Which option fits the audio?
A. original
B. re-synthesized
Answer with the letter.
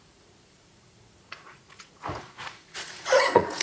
B